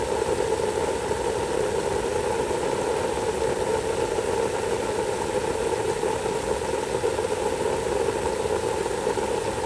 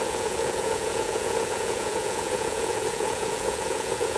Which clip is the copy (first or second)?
second